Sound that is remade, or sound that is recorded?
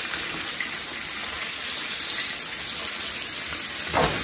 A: recorded